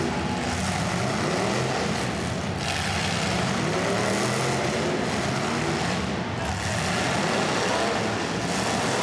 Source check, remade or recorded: recorded